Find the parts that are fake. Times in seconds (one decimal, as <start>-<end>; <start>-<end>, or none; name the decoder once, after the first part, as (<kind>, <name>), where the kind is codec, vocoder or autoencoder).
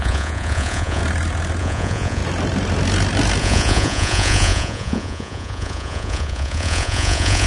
0.0-1.0 (vocoder, Vocos); 1.6-2.2; 3.4-7.5